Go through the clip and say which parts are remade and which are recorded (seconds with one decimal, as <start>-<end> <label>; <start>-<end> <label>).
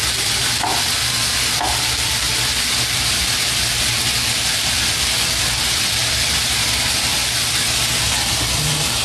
0.0-9.0 recorded